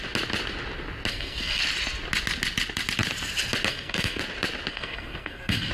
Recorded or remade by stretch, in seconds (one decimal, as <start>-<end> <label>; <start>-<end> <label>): 0.0-1.1 recorded; 1.1-1.6 remade; 1.6-3.7 recorded; 3.7-4.2 remade; 4.2-4.7 recorded; 4.7-5.7 remade